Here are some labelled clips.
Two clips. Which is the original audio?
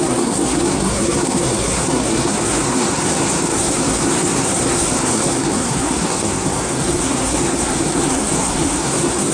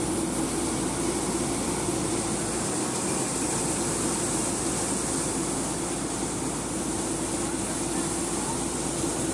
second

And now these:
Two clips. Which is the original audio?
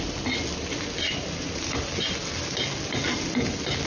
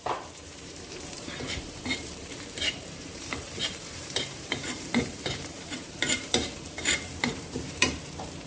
first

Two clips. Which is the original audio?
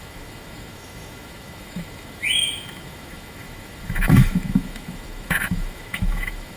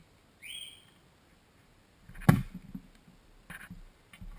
second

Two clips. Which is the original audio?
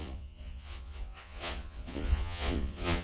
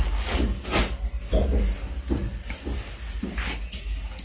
second